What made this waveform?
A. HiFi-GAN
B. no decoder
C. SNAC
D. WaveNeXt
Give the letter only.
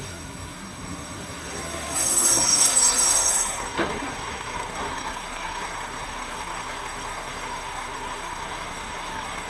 C